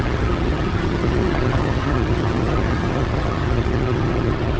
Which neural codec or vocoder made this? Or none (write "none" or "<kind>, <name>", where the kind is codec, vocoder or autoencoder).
vocoder, HiFi-GAN